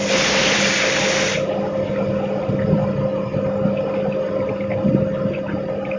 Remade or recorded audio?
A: recorded